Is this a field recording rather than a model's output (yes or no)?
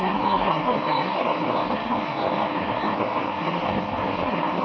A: no